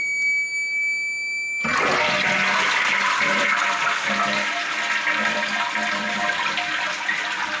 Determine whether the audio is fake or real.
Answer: real